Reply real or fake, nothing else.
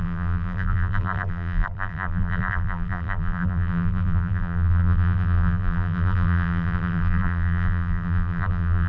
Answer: fake